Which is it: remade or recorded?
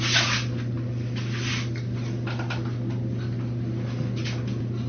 recorded